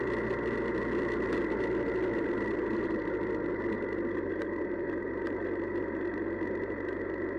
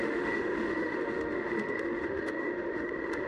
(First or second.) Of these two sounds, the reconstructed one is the second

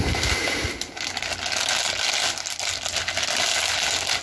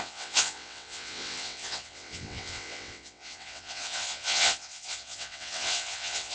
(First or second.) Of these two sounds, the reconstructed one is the second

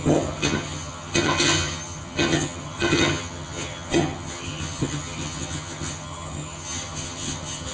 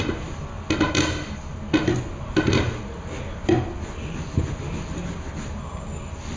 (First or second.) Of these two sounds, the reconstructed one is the first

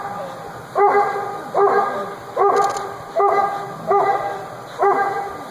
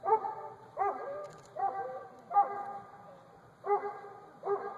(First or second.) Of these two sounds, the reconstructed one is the second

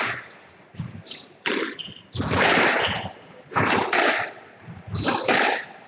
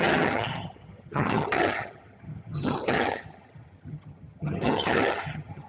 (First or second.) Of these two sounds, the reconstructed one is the second